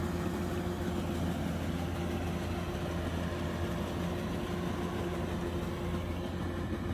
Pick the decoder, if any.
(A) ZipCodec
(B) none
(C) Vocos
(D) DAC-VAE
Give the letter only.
B